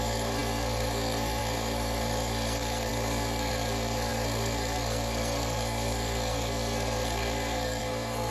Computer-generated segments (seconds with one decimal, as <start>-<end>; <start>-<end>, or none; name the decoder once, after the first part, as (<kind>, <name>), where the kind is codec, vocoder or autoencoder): 0.0-8.3 (codec, SNAC)